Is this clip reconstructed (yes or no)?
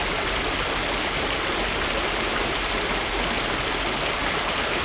no